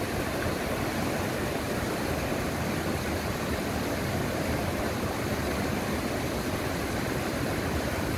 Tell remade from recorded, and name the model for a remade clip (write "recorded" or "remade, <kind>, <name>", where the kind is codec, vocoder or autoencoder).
recorded